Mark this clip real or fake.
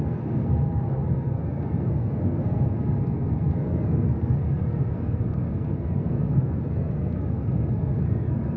fake